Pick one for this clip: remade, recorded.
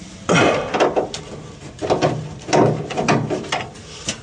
recorded